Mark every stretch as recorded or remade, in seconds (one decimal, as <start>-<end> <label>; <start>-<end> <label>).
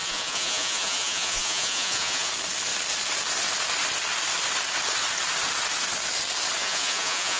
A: 0.0-2.3 remade; 2.3-6.6 recorded; 6.6-7.4 remade